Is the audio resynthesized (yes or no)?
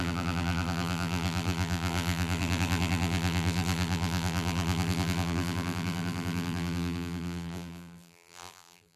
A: yes